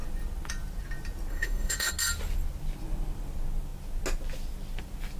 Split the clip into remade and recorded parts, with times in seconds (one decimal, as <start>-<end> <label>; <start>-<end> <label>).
0.0-1.3 recorded; 1.3-1.9 remade; 1.9-5.2 recorded